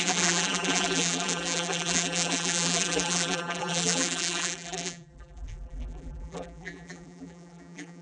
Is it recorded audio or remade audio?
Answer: remade